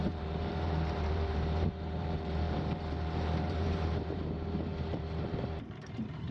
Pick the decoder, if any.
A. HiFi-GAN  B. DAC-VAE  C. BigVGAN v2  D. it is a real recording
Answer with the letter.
C